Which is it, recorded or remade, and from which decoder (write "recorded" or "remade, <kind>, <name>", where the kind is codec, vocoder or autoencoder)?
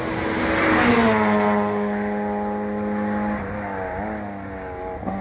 recorded